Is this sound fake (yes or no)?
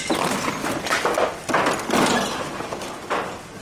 no